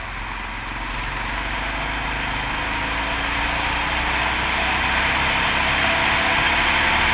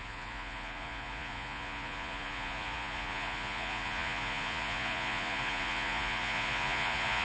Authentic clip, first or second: first